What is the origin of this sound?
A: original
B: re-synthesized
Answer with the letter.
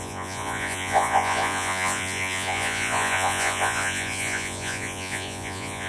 B